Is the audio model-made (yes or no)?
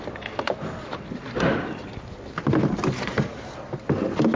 no